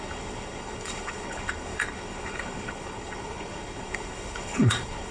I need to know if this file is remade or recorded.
remade